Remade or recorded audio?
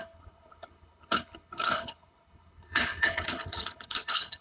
remade